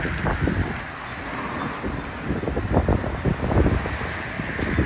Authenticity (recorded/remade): recorded